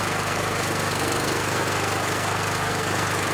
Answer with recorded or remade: remade